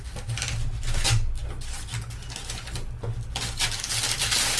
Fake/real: real